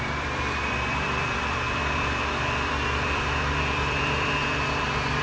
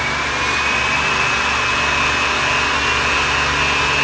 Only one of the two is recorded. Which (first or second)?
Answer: second